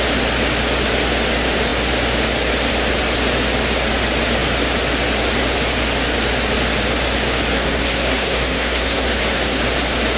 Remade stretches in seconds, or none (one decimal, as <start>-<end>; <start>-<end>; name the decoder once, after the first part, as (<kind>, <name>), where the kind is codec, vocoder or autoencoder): 7.5-9.6 (codec, SNAC)